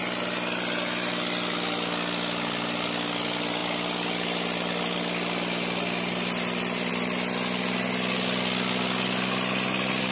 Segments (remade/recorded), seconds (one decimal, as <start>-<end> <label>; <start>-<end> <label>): 0.0-10.1 recorded